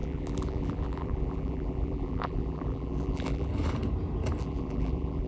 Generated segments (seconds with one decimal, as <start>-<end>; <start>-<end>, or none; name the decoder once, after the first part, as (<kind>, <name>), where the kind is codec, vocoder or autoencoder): 0.0-3.5 (vocoder, BigVGAN v2); 4.4-5.3